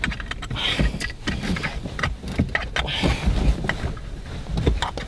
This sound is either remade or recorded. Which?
recorded